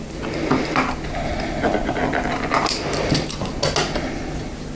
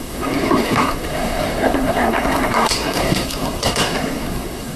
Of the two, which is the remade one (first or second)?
second